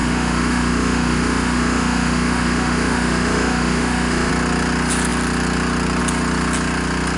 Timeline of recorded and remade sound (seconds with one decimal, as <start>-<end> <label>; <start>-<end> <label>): 0.0-4.3 remade; 4.3-7.2 recorded